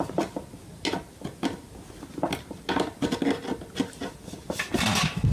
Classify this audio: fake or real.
real